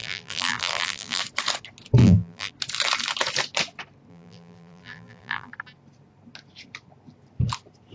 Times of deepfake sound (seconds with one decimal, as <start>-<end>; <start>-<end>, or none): 0.0-1.2; 2.0-2.5; 4.1-5.5